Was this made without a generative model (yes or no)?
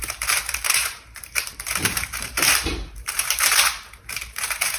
no